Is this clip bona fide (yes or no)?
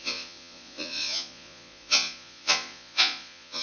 no